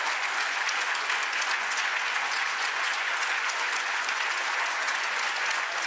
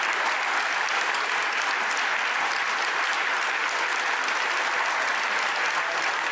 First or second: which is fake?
first